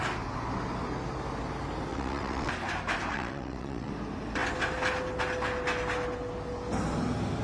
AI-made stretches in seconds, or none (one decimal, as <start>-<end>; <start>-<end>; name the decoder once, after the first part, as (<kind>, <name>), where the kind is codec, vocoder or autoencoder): 1.9-2.5 (vocoder, WaveNeXt); 3.1-3.9